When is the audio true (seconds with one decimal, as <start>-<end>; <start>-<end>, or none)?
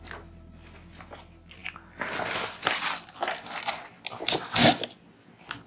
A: 0.0-5.7